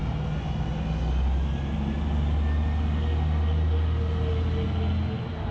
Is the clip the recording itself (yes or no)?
yes